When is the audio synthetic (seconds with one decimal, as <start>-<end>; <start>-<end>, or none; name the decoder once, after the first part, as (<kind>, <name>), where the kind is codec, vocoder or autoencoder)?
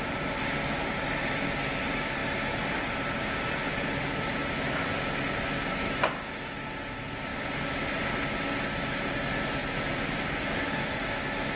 9.6-10.2 (vocoder, BigVGAN v2)